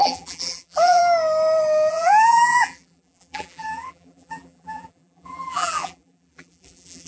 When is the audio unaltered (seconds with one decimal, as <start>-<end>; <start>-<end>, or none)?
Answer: 1.0-1.9